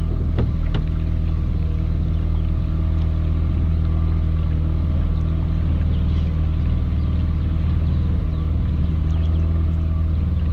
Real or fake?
real